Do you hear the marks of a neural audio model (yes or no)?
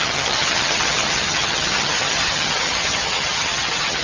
yes